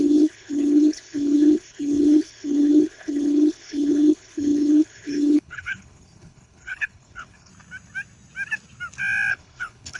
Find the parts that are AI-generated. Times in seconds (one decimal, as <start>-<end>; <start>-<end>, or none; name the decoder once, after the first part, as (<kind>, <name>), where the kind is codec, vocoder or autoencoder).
0.0-7.5 (codec, HILCodec); 9.3-10.0

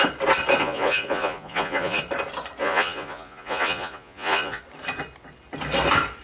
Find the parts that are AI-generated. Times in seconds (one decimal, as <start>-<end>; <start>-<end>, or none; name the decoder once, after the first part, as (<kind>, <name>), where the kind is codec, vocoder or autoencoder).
0.6-2.0 (vocoder, Vocos); 2.6-4.6

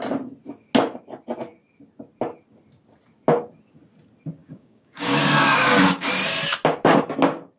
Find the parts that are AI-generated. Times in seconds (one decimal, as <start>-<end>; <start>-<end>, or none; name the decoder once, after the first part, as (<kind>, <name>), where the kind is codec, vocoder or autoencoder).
4.4-6.1 (codec, DAC)

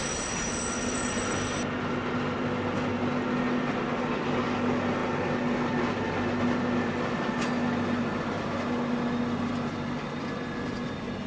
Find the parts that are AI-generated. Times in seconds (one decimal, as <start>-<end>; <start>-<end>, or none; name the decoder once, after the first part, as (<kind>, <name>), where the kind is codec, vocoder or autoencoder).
none